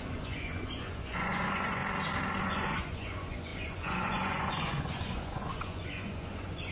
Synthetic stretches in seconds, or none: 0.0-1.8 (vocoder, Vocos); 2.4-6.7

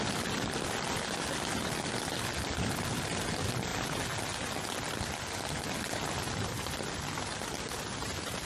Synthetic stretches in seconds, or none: none

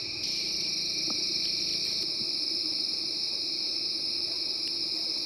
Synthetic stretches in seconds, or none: 1.7-3.8 (vocoder, BigVGAN v2)

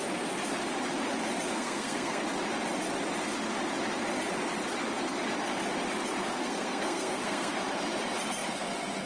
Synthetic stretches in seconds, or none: 1.5-2.2 (codec, SNAC); 6.2-7.6